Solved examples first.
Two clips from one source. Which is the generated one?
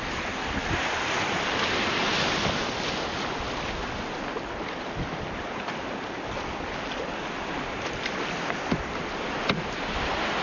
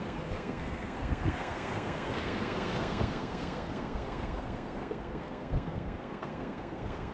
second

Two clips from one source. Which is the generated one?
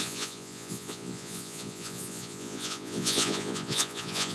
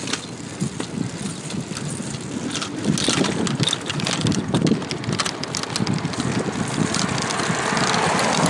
first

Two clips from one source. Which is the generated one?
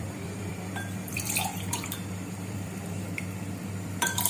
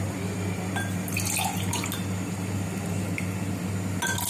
first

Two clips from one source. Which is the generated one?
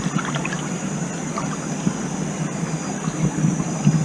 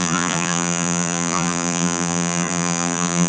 second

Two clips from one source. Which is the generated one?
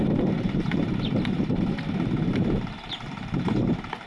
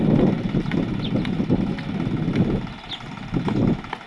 first